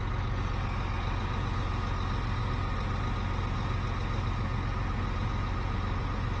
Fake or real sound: real